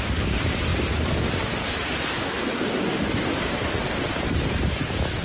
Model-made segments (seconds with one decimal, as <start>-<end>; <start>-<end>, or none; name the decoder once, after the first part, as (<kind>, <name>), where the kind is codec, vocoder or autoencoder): none